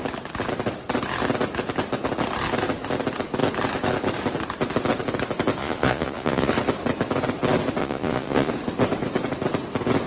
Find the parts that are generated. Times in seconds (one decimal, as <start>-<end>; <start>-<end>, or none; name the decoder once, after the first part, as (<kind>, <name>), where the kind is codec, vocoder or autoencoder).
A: 5.6-6.5 (vocoder, Vocos); 7.8-8.5